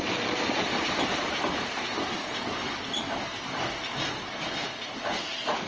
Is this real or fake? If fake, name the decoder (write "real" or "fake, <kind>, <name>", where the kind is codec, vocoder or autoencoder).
real